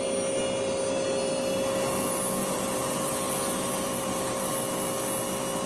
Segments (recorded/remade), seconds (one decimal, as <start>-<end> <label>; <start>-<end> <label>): 0.0-2.4 recorded; 2.4-4.5 remade; 4.5-5.7 recorded